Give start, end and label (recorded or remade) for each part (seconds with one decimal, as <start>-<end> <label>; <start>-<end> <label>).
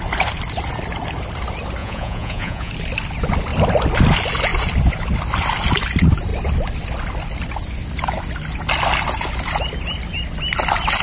0.0-1.8 recorded; 1.8-2.7 remade; 2.7-11.0 recorded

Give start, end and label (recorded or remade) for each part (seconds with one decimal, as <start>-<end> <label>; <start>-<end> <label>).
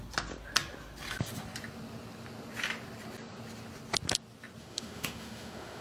0.0-4.6 recorded; 4.6-5.8 remade